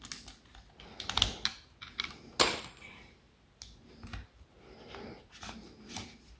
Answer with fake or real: real